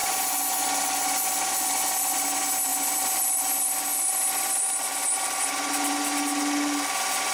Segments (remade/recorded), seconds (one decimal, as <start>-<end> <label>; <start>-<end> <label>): 0.0-7.3 recorded